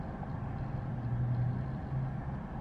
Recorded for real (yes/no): yes